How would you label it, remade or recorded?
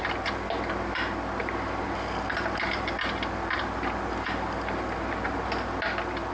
recorded